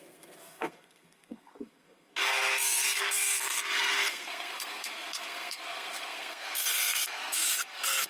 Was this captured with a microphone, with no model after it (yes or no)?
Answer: no